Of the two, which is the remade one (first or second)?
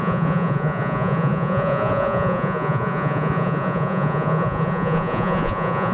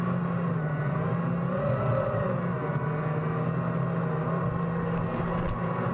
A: first